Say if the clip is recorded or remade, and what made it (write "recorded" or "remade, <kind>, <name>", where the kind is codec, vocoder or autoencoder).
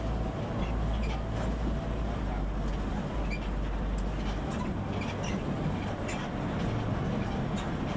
recorded